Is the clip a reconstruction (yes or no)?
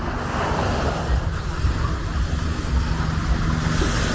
no